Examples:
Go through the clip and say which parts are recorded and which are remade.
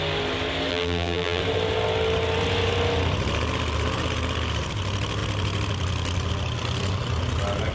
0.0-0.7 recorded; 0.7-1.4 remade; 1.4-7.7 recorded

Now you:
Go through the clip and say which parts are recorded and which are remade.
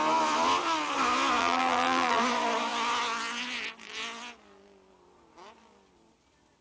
0.0-1.4 recorded; 1.4-2.2 remade; 2.2-6.6 recorded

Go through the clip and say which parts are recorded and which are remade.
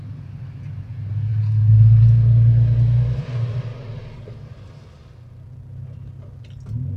0.0-7.0 recorded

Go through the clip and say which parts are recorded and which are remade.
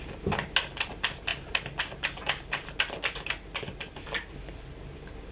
0.0-5.3 recorded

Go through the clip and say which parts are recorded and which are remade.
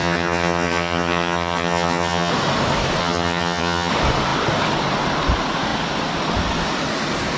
0.0-2.3 remade; 2.3-3.0 recorded; 3.0-3.9 remade; 3.9-7.4 recorded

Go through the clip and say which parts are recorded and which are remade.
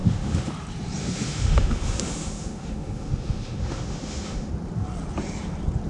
0.0-0.5 remade; 0.5-1.0 recorded; 1.0-4.5 remade; 4.5-5.9 recorded